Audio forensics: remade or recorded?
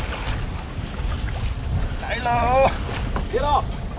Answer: recorded